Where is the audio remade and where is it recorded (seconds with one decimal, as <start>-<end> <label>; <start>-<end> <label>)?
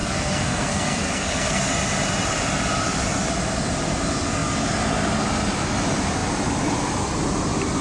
0.0-1.7 remade; 1.7-7.8 recorded